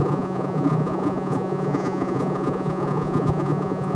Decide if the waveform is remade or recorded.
remade